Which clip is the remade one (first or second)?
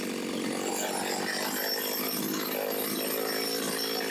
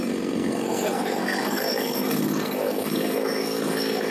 second